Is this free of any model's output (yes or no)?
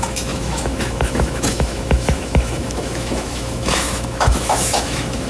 no